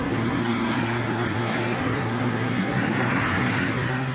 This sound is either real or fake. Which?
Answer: fake